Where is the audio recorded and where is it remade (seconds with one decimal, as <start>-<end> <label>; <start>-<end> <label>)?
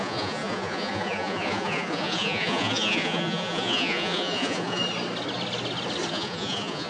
0.0-4.8 remade; 4.8-6.1 recorded; 6.1-6.9 remade